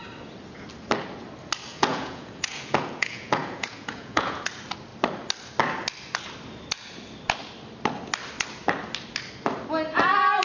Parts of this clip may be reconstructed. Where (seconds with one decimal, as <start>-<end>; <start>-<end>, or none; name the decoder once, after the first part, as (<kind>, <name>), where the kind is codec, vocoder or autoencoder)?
1.7-4.5 (vocoder, Vocos)